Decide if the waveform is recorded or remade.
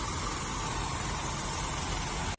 recorded